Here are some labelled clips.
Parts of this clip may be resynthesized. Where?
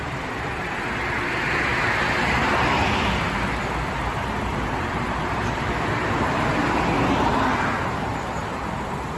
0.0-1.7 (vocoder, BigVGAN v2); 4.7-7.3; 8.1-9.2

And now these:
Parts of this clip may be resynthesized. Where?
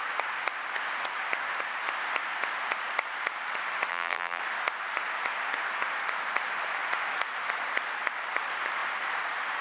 3.9-4.4 (vocoder, BigVGAN v2)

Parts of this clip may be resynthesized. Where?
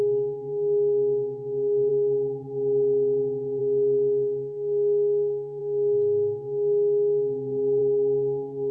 none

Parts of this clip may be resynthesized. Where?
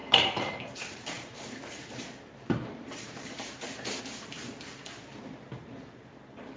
0.0-4.0 (vocoder, BigVGAN v2)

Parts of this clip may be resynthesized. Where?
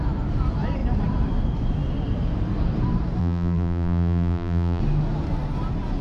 3.2-4.8 (vocoder, BigVGAN v2)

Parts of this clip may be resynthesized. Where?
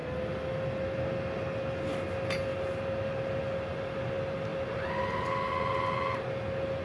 2.5-3.8 (vocoder, BigVGAN v2)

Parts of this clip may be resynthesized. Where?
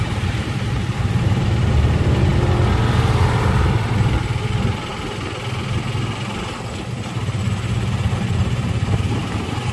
0.0-2.3 (vocoder, BigVGAN v2); 3.0-4.9; 8.4-9.7